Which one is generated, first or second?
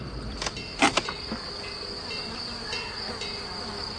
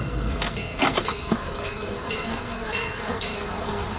second